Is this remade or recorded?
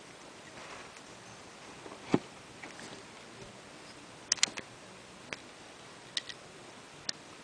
recorded